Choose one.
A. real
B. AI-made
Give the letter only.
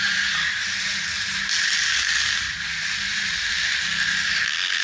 A